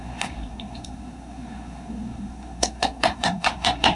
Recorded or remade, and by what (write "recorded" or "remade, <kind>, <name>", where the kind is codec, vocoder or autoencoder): remade, codec, SNAC